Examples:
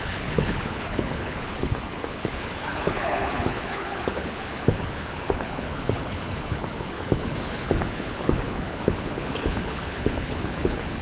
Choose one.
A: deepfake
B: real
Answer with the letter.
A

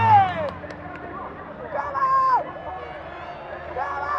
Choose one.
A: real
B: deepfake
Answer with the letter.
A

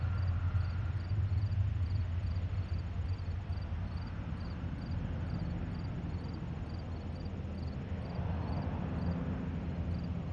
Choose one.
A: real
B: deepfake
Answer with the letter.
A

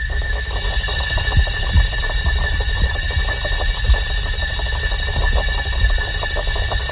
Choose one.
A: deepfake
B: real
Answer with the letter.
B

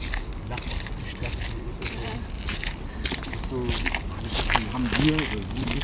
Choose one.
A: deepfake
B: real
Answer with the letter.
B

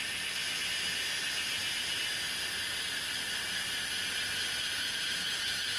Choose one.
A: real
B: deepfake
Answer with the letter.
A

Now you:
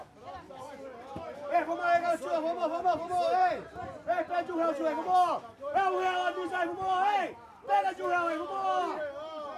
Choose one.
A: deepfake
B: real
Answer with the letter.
B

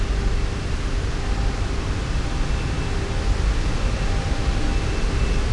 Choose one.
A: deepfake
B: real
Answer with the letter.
B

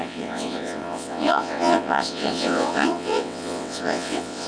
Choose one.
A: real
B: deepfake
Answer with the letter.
B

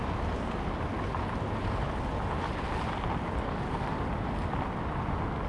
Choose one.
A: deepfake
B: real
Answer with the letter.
B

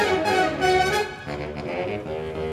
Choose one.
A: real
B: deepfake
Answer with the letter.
A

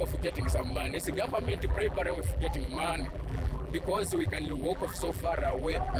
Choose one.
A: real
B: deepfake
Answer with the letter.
B